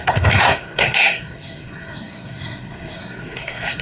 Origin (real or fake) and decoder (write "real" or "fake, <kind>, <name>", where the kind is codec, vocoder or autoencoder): fake, codec, SNAC